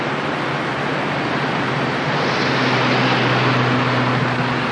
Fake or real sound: real